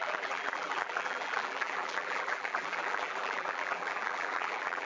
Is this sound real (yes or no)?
no